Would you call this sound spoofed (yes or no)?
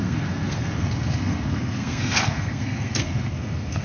yes